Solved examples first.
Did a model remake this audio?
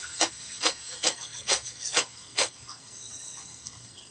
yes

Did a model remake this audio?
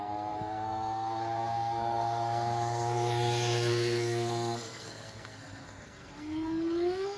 yes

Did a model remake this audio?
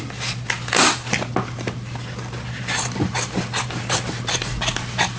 no